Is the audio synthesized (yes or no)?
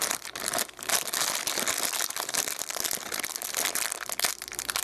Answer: no